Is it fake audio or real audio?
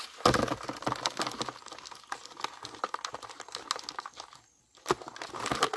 real